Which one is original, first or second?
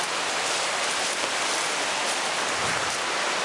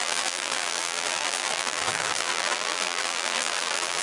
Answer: first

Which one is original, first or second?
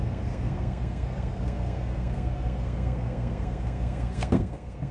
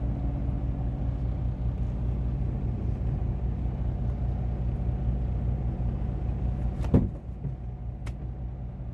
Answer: second